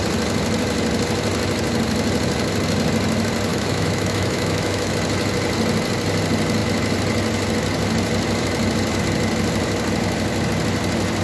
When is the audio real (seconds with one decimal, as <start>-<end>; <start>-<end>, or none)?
0.0-3.5; 4.9-11.2

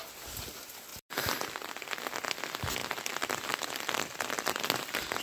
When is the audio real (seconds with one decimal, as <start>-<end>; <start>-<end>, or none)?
0.0-0.9; 1.9-2.8

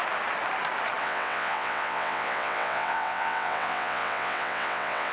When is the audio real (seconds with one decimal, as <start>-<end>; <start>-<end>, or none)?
0.0-1.0